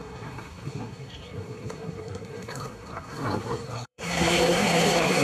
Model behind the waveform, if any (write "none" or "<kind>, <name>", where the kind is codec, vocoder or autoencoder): codec, SNAC